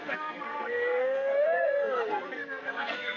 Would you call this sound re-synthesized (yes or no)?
yes